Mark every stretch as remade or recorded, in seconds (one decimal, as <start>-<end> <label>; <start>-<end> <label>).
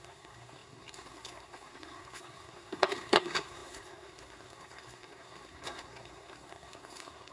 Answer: 0.0-7.3 remade